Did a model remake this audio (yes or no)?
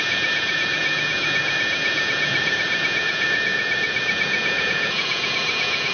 yes